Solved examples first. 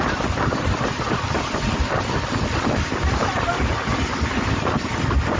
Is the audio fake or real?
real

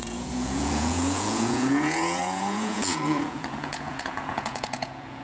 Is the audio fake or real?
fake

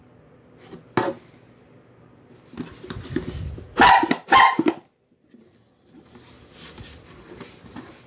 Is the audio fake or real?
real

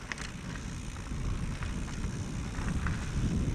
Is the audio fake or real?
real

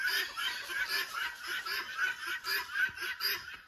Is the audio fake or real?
real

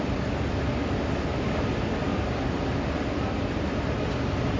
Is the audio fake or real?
real